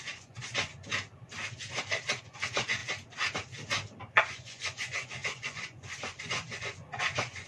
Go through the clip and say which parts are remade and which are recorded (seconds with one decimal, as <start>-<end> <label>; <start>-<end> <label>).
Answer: 0.0-0.7 remade; 0.7-2.2 recorded; 2.2-2.8 remade; 2.8-4.1 recorded; 4.1-7.5 remade